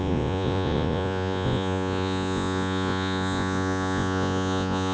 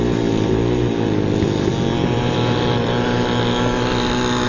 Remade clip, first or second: first